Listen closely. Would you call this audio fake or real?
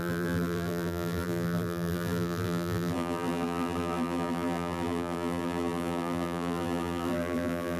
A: fake